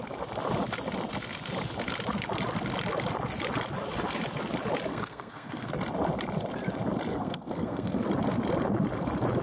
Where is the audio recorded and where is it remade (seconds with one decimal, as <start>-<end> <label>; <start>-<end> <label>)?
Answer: 0.0-4.9 recorded; 4.9-5.7 remade; 5.7-7.1 recorded; 7.1-8.0 remade; 8.0-9.4 recorded

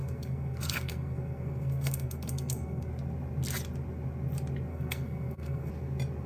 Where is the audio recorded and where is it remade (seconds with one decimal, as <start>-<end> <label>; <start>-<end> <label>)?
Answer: 0.0-2.9 remade; 2.9-4.7 recorded; 4.7-5.7 remade; 5.7-6.3 recorded

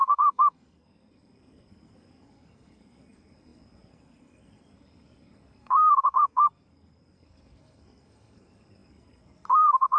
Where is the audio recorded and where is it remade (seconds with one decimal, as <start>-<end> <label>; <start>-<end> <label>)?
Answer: 0.0-10.0 remade